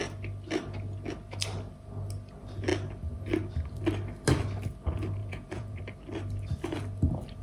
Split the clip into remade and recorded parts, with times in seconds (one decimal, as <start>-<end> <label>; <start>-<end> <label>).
0.0-5.2 recorded; 5.2-5.8 remade; 5.8-7.4 recorded